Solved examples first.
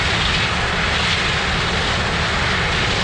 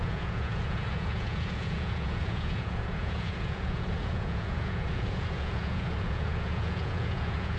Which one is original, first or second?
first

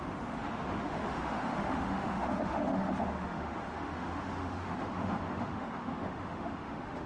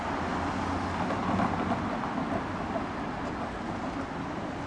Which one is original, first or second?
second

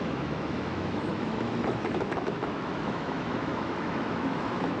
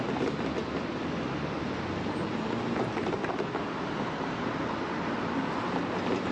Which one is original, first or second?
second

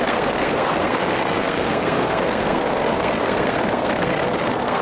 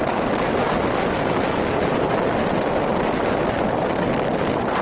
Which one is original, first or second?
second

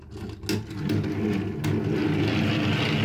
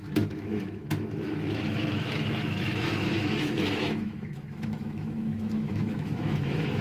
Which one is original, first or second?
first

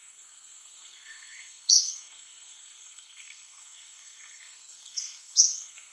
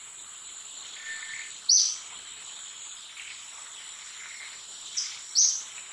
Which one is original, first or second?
second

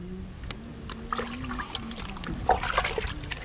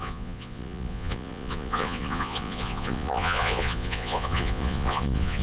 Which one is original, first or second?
first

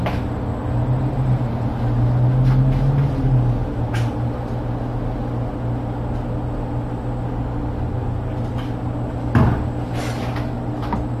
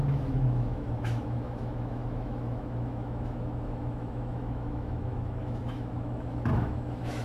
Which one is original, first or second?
first